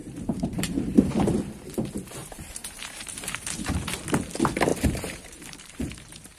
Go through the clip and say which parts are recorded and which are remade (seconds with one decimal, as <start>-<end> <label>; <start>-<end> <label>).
0.0-1.1 remade; 1.1-2.2 recorded; 2.2-3.7 remade; 3.7-4.7 recorded; 4.7-6.4 remade

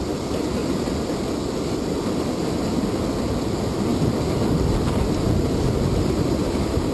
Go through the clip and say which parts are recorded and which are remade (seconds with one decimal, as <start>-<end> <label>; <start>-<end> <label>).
0.0-3.9 recorded; 3.9-4.9 remade; 4.9-6.9 recorded